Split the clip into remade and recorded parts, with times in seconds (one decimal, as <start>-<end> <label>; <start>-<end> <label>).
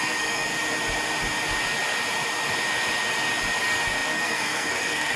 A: 0.0-0.5 remade; 0.5-3.6 recorded; 3.6-5.2 remade